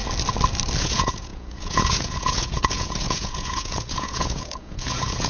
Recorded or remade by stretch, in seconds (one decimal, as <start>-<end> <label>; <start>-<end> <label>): 0.0-0.8 recorded; 0.8-5.3 remade